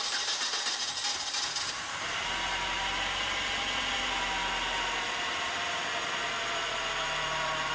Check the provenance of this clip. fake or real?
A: real